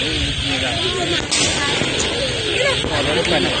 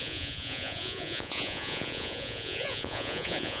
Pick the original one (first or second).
first